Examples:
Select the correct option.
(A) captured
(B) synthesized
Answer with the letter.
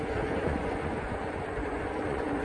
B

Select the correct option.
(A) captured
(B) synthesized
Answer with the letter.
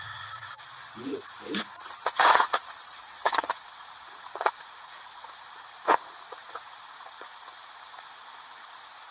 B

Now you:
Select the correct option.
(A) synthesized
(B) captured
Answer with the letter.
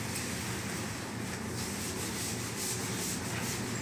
B